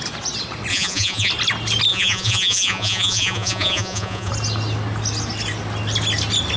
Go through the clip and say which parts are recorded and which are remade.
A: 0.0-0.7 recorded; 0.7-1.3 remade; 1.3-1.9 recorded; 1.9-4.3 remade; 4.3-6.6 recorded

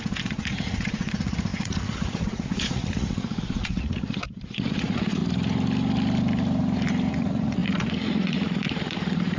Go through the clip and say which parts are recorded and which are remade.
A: 0.0-5.2 remade; 5.2-7.1 recorded; 7.1-9.4 remade

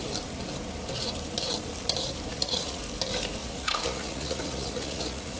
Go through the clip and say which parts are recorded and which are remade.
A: 0.0-2.3 recorded; 2.3-2.8 remade; 2.8-3.4 recorded; 3.4-5.4 remade

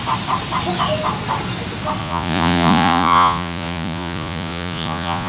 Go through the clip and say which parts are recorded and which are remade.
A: 0.0-2.0 recorded; 2.0-5.3 remade

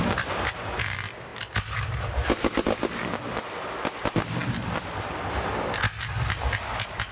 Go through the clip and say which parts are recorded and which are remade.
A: 0.0-7.1 recorded

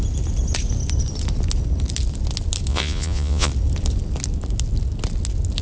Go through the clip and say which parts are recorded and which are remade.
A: 0.0-2.7 recorded; 2.7-3.5 remade; 3.5-5.6 recorded

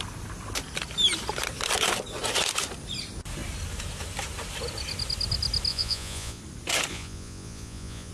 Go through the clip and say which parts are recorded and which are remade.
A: 0.0-5.7 recorded; 5.7-6.4 remade; 6.4-6.9 recorded; 6.9-8.1 remade